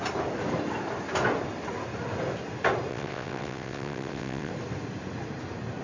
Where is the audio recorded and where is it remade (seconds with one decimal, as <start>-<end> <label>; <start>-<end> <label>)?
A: 0.0-2.9 recorded; 2.9-4.5 remade; 4.5-5.8 recorded